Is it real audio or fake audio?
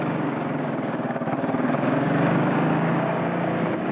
fake